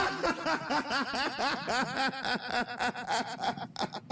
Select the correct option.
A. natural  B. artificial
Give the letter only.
A